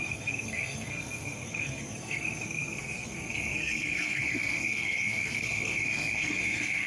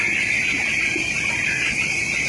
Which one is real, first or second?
second